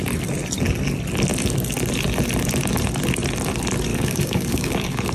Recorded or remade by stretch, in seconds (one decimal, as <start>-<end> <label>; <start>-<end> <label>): 0.0-3.9 recorded; 3.9-5.1 remade